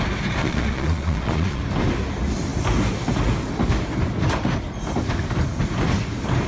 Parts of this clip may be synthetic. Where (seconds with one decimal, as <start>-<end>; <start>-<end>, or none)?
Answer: 0.4-1.6